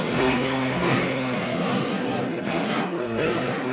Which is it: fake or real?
fake